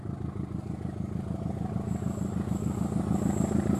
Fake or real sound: real